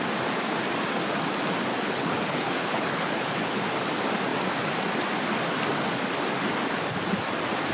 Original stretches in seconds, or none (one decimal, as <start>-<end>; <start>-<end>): 0.0-1.7; 3.6-7.7